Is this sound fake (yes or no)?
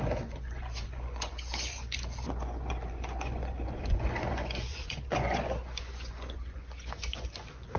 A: yes